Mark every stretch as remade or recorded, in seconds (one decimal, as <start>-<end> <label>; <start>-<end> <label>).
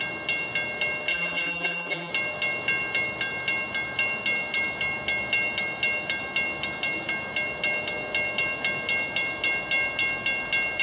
0.0-1.1 recorded; 1.1-2.1 remade; 2.1-10.8 recorded